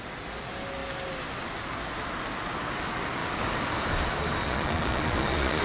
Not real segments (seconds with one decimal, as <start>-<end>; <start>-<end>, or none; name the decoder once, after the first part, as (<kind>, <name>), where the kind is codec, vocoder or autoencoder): 4.4-5.6 (vocoder, Vocos)